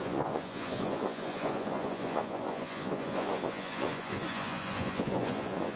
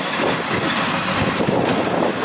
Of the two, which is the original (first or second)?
second